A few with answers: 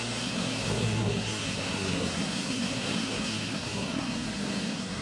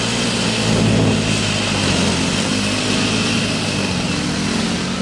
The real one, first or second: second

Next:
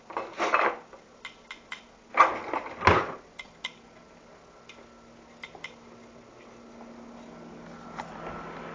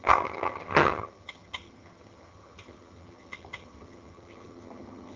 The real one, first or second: first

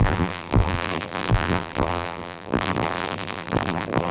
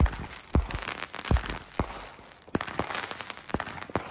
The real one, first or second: second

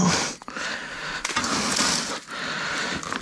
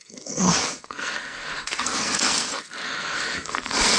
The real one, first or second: first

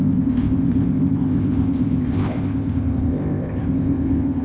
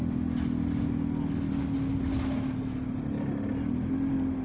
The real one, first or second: second